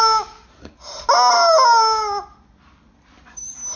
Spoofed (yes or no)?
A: no